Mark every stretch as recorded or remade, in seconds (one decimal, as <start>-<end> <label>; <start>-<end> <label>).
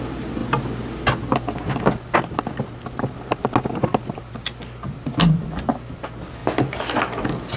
0.0-7.6 recorded